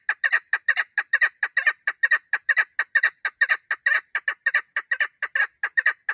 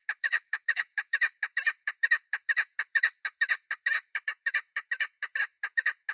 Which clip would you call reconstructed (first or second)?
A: second